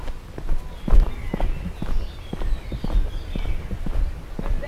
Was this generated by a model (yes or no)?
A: no